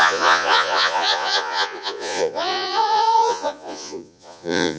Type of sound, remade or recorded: remade